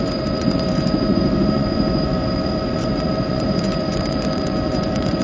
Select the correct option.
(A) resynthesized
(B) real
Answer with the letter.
A